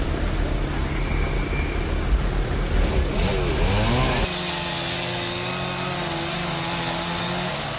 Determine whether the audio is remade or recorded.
recorded